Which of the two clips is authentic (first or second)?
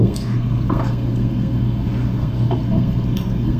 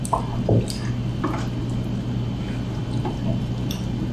second